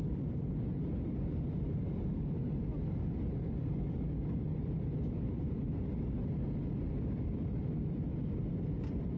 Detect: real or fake real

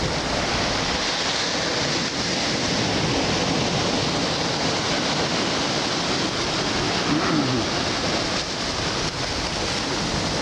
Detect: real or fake real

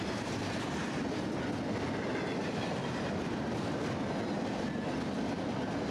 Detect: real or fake real